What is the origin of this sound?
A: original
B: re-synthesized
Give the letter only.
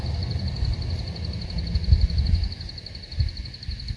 A